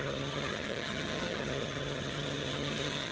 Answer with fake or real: fake